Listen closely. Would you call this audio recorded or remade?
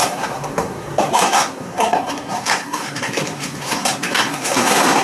remade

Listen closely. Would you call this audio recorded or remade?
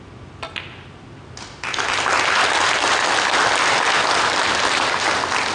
recorded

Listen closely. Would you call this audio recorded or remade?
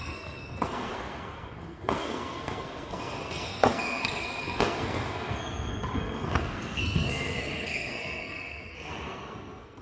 remade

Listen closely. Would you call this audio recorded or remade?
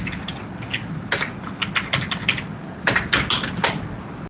recorded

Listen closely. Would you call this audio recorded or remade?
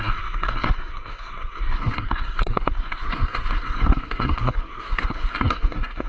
remade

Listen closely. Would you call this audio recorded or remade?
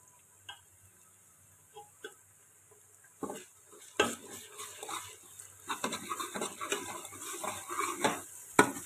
recorded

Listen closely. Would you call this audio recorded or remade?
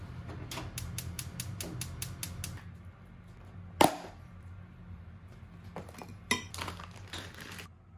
recorded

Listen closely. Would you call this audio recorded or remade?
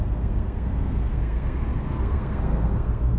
remade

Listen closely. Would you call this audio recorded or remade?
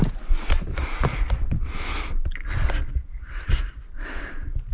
recorded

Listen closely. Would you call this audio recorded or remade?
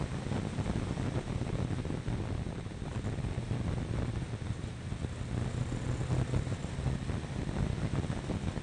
recorded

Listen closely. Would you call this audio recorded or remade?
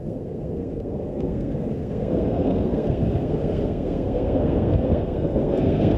remade